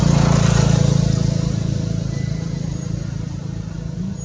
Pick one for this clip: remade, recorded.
recorded